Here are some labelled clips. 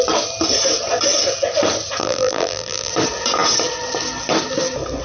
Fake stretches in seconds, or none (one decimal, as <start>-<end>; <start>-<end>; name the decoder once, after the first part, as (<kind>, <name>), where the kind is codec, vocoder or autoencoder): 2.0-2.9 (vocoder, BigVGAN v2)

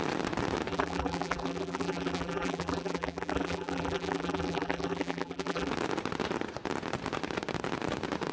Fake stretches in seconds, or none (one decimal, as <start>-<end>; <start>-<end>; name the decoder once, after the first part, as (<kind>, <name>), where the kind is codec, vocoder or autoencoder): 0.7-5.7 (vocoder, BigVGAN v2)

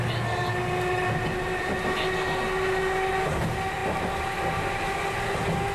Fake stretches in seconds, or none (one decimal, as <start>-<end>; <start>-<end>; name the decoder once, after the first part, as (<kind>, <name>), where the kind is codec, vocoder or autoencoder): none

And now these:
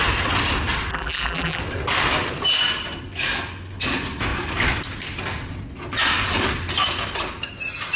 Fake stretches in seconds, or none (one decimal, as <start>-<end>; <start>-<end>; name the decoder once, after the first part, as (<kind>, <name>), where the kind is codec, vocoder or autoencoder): 0.9-1.6 (vocoder, BigVGAN v2)